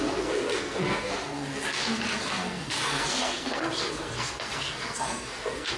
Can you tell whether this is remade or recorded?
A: remade